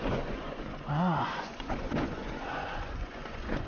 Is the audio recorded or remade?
remade